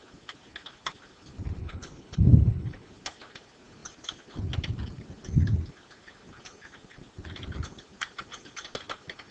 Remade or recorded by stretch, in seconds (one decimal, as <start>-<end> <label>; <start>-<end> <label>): 0.0-1.6 recorded; 1.6-2.9 remade; 2.9-9.3 recorded